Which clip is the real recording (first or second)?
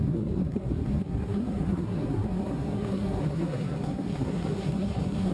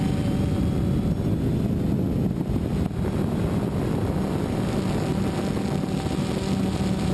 second